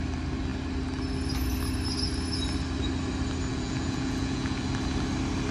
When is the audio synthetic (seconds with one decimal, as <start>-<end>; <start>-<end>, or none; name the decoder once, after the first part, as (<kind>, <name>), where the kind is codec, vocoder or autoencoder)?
3.5-4.6 (vocoder, Vocos)